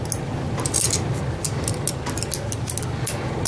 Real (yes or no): yes